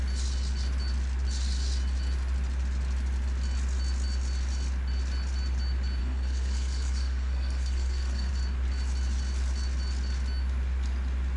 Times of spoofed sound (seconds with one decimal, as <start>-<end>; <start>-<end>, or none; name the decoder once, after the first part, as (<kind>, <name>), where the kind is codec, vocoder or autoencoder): 6.0-8.3 (codec, SNAC)